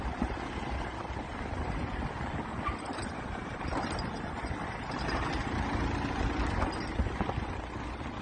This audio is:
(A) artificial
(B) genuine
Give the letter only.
B